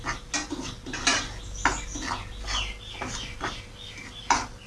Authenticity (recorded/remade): recorded